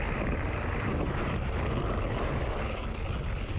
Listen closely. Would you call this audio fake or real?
real